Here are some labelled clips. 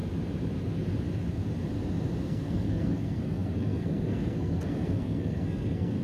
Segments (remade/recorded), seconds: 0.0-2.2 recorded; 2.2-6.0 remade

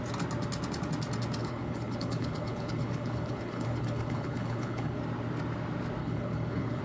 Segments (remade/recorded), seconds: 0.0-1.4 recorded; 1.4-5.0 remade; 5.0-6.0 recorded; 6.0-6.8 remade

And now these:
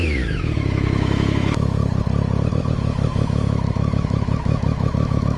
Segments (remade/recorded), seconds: 0.0-1.8 remade; 1.8-2.6 recorded; 2.6-5.4 remade